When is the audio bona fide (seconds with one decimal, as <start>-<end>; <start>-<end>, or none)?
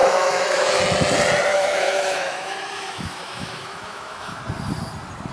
0.8-1.5; 4.4-5.3